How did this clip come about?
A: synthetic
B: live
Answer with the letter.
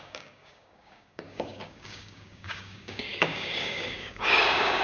A